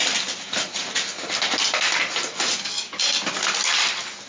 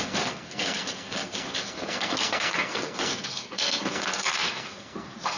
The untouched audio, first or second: first